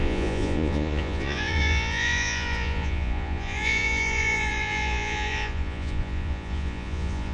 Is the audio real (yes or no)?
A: no